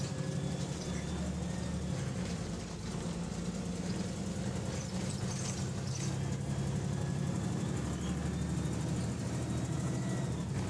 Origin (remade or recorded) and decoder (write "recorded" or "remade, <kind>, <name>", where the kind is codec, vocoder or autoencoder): recorded